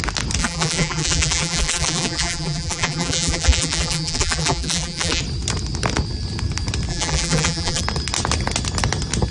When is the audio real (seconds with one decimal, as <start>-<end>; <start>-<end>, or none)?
0.0-0.4; 5.2-6.9; 7.8-9.3